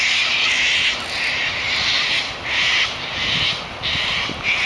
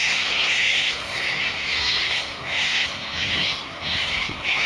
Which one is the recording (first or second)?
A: first